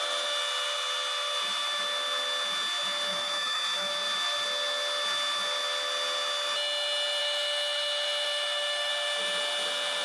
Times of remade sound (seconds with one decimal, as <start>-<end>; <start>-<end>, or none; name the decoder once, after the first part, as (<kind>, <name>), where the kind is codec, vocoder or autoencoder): 3.1-3.9 (autoencoder, DAC-VAE); 7.2-8.9